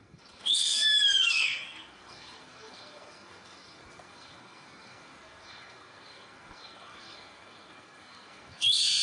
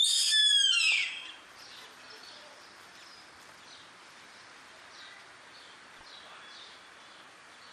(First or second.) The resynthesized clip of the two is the first